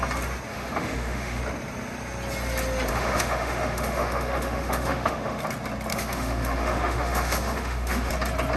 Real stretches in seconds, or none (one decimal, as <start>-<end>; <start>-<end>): 0.0-0.5; 1.4-2.9; 5.4-5.9; 8.1-8.6